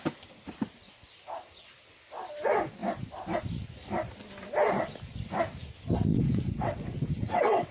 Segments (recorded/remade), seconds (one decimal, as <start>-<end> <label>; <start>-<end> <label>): 0.0-6.1 recorded; 6.1-7.7 remade